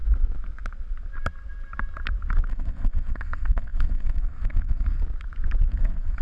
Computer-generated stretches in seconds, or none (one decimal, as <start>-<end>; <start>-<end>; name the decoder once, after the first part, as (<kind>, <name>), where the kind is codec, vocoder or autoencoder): 2.5-5.0 (codec, SNAC); 5.7-6.2